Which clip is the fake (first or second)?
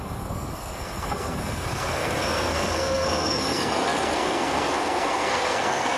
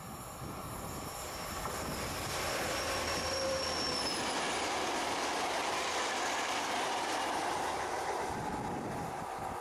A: first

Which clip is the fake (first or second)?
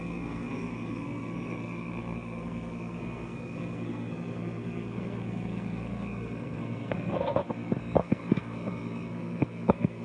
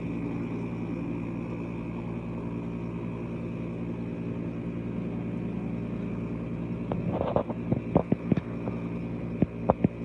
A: first